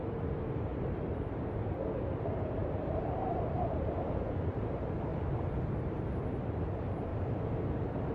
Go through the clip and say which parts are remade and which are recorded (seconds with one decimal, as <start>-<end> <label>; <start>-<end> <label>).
0.0-0.7 remade; 0.7-2.2 recorded; 2.2-5.1 remade; 5.1-5.9 recorded; 5.9-8.1 remade